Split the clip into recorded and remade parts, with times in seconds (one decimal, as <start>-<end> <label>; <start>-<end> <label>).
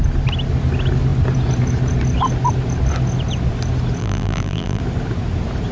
0.0-4.0 recorded; 4.0-4.8 remade; 4.8-5.7 recorded